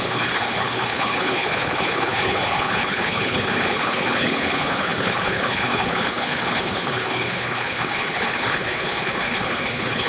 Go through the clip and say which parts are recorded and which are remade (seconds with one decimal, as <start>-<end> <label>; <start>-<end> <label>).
0.0-10.1 remade